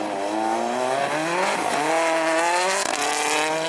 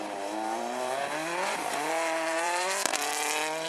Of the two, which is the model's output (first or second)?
second